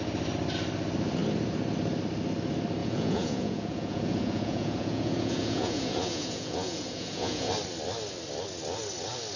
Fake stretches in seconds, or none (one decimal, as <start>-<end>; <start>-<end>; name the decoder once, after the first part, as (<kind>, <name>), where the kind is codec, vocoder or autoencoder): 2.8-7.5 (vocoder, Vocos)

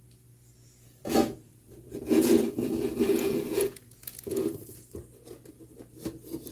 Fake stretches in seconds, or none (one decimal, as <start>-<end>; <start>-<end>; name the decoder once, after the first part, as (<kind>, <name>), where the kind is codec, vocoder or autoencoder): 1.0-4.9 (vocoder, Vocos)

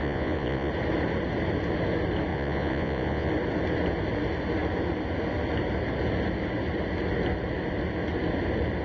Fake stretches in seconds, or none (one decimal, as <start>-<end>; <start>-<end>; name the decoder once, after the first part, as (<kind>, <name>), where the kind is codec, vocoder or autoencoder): 0.0-0.7 (vocoder, Vocos); 2.3-3.3

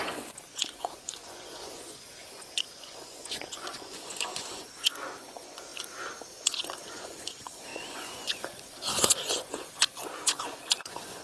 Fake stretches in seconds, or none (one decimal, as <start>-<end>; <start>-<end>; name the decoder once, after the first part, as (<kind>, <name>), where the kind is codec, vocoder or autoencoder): 0.0-5.7 (vocoder, Vocos); 6.4-11.2

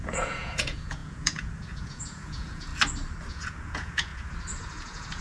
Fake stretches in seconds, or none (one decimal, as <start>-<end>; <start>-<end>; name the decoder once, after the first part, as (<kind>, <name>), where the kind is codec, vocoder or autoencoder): 0.0-2.7 (vocoder, Vocos); 3.3-4.1; 4.6-5.2